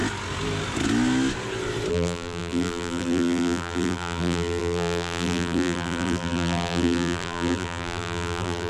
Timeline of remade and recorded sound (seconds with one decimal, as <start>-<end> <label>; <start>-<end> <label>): 0.0-1.9 recorded; 1.9-8.7 remade